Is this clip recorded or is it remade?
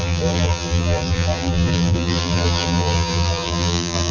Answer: remade